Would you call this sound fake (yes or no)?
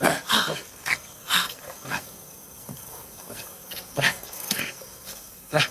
yes